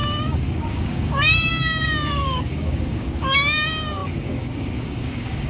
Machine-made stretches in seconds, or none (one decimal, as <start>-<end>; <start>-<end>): 0.0-5.5